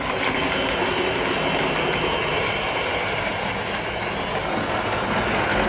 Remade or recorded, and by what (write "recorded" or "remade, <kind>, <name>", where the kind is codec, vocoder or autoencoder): recorded